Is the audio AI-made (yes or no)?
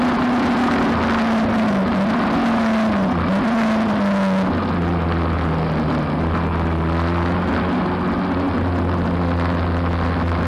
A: no